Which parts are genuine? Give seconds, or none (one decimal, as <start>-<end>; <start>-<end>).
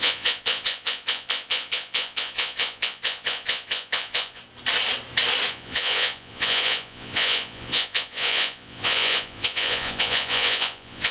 4.4-5.5